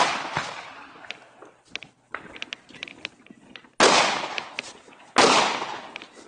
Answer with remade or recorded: recorded